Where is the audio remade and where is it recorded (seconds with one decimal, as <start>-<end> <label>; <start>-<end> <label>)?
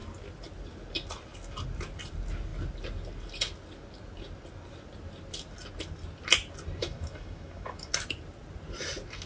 0.0-6.8 recorded; 6.8-7.9 remade; 7.9-9.3 recorded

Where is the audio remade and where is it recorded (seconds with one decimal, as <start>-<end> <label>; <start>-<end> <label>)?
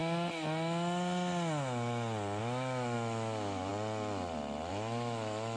0.0-2.4 recorded; 2.4-3.7 remade; 3.7-4.7 recorded; 4.7-5.6 remade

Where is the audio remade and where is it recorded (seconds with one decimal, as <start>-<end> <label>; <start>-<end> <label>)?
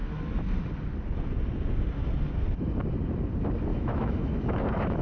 0.0-3.7 recorded; 3.7-5.0 remade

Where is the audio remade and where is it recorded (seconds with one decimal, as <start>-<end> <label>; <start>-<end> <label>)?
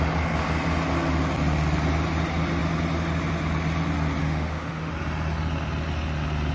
0.0-4.2 recorded; 4.2-4.9 remade; 4.9-6.5 recorded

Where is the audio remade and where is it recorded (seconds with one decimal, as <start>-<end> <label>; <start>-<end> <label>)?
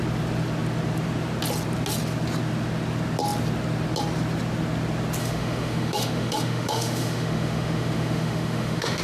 0.0-5.2 recorded; 5.2-9.0 remade